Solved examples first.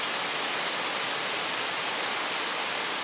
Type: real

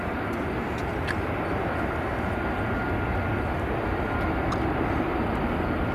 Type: real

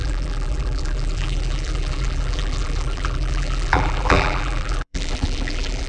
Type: fake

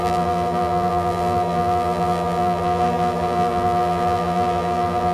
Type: fake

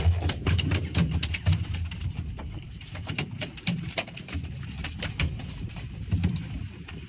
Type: fake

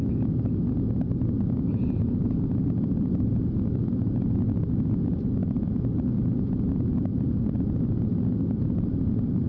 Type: real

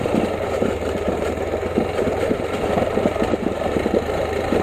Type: fake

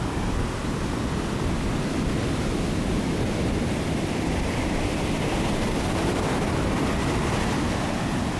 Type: real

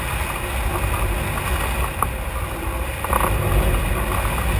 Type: real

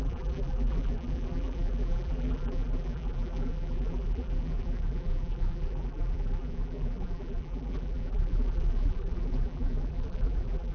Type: fake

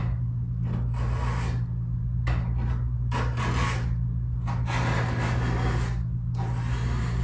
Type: real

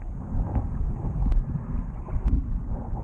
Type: real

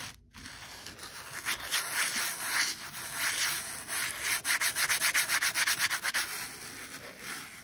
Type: real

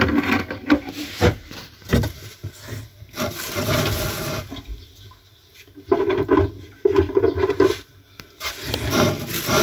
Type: real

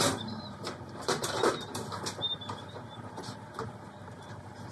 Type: fake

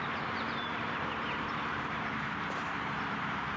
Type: fake